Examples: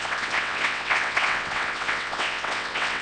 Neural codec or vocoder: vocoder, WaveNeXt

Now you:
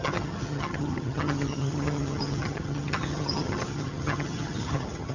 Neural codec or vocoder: vocoder, HiFi-GAN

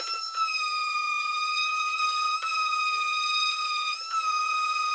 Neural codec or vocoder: vocoder, Vocos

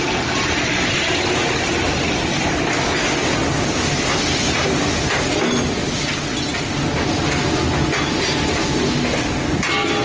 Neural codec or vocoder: none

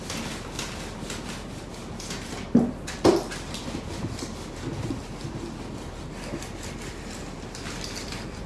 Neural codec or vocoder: none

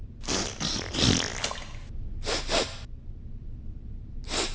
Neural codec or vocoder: none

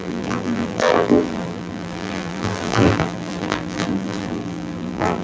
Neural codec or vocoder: vocoder, BigVGAN v2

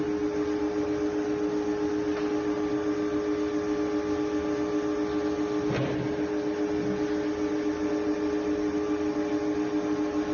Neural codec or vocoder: none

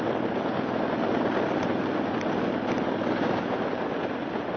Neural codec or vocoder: none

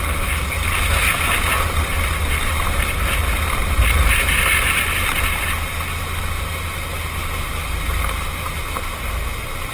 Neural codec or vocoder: none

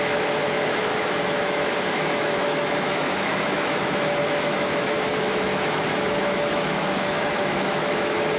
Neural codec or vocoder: autoencoder, DAC-VAE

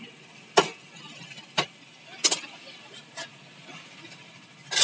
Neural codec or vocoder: none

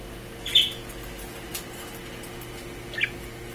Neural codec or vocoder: none